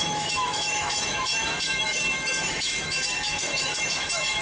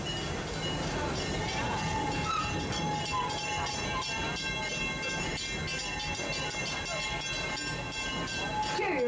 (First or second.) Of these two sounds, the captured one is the second